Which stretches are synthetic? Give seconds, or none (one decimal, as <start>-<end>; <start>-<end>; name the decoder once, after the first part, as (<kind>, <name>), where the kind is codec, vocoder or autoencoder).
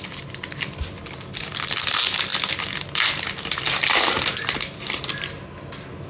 none